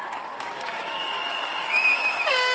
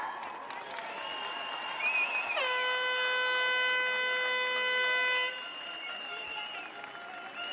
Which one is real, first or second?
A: second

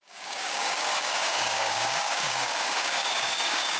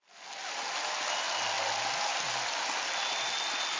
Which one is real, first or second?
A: second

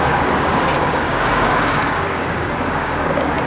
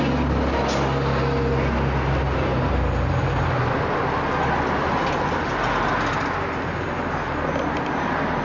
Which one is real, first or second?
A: second